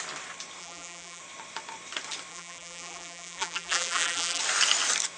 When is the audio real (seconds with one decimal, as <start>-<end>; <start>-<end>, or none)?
0.0-0.6; 1.2-2.3; 4.4-5.2